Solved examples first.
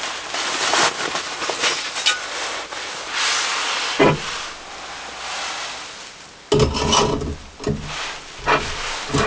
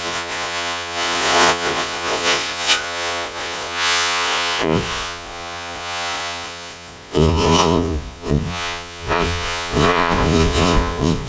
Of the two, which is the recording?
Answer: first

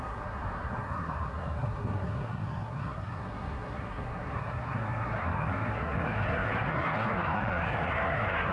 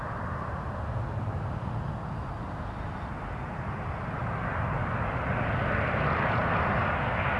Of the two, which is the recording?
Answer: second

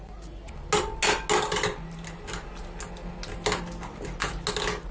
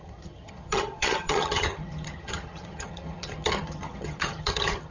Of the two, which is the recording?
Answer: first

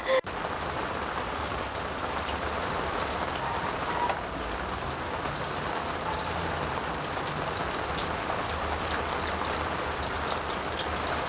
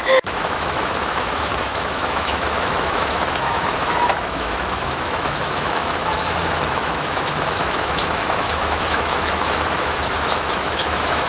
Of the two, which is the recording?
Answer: first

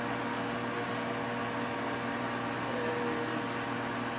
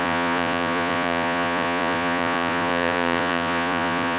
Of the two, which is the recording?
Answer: first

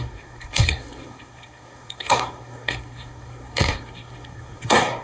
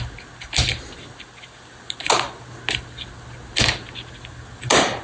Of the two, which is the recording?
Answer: second